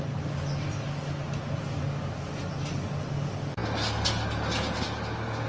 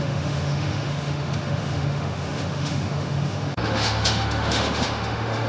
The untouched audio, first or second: first